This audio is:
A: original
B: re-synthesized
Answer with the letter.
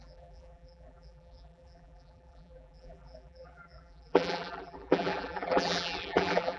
B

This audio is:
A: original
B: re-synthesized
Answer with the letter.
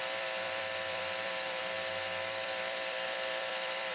B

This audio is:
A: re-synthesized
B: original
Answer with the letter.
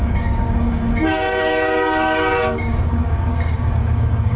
A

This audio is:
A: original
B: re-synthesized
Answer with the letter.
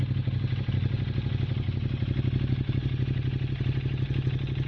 A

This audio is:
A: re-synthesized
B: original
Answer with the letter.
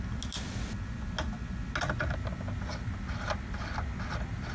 B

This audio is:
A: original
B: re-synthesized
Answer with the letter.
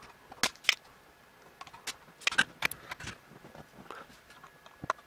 A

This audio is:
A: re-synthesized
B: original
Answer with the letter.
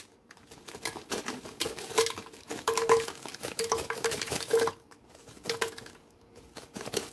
A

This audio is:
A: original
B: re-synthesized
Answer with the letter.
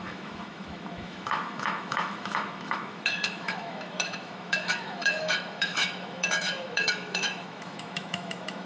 B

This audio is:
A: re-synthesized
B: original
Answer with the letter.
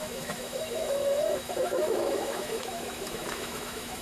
A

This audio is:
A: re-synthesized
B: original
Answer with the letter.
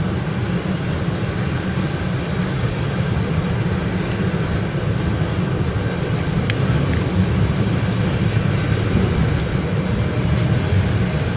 B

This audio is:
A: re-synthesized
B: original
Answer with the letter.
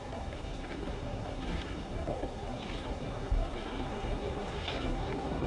A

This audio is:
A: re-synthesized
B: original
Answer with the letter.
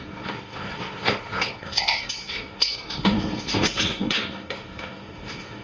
A